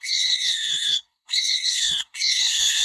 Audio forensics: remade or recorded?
remade